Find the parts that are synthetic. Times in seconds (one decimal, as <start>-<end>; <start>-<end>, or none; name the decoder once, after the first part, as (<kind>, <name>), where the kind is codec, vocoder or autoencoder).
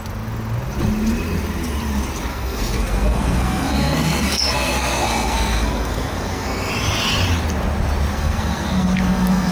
2.3-6.7 (codec, SNAC); 8.1-9.5